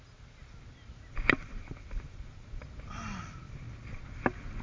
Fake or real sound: real